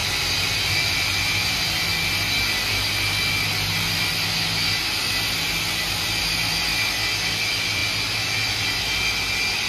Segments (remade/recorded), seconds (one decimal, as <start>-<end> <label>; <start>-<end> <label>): 0.0-9.7 recorded